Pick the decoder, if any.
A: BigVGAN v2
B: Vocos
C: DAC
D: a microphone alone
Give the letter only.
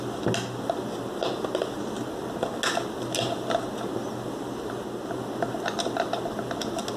D